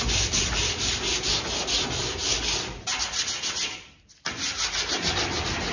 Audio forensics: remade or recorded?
recorded